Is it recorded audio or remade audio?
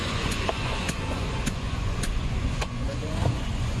remade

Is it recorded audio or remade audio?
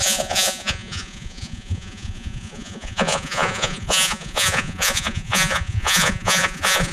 remade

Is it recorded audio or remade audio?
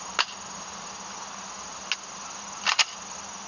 recorded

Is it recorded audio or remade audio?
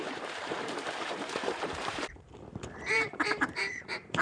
remade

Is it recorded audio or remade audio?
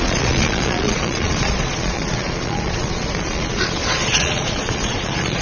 remade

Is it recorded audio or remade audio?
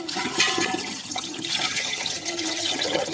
remade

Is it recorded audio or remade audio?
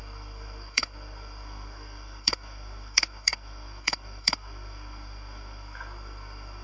remade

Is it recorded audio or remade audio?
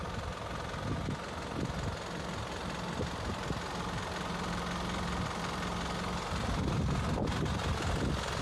recorded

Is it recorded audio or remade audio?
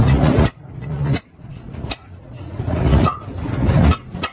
remade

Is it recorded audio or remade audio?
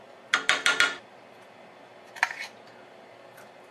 recorded